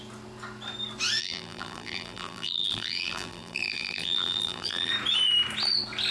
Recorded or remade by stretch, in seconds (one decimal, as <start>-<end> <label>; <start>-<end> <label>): 0.0-1.2 recorded; 1.2-4.9 remade; 4.9-6.1 recorded